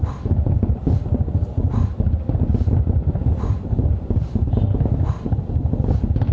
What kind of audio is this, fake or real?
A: real